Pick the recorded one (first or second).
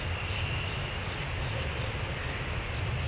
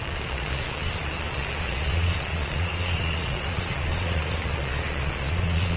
first